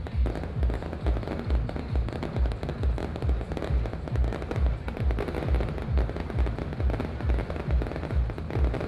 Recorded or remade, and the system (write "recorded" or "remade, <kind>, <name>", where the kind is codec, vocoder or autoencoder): recorded